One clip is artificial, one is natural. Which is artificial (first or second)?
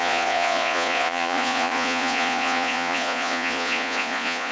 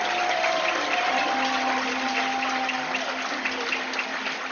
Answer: first